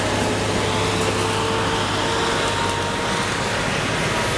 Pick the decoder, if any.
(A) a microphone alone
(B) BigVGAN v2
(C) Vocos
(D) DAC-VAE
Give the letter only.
A